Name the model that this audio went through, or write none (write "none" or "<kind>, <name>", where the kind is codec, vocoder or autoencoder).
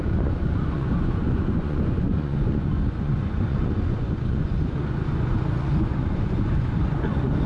vocoder, Vocos